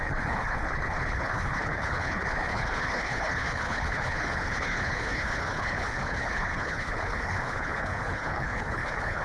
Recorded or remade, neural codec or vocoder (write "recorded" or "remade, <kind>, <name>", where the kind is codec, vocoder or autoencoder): remade, codec, HILCodec